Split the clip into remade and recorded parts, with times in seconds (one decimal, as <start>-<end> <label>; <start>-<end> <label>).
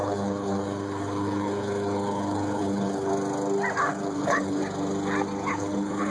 0.0-3.1 remade; 3.1-3.9 recorded; 3.9-4.6 remade; 4.6-5.5 recorded; 5.5-6.1 remade